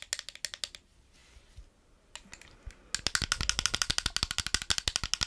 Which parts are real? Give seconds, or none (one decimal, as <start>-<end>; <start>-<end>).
0.0-5.3